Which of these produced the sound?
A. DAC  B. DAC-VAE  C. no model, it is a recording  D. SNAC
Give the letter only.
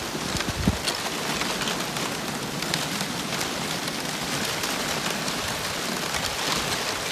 C